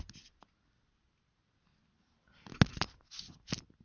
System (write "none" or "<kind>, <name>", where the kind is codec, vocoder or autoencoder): none